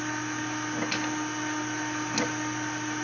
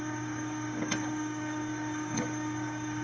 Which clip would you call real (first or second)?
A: first